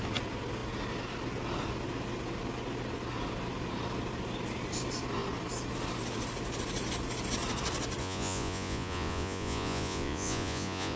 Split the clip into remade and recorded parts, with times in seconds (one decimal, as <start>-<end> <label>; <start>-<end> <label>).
0.0-8.0 recorded; 8.0-11.0 remade